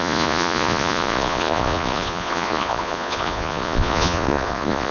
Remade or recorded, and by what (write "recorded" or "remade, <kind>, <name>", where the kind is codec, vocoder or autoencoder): remade, vocoder, Vocos